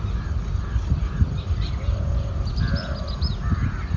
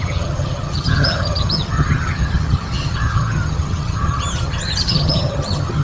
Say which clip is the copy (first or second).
second